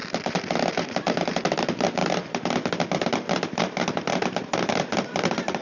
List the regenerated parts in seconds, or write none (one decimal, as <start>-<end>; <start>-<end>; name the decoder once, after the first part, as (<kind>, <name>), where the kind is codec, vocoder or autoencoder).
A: 0.0-5.6 (vocoder, BigVGAN v2)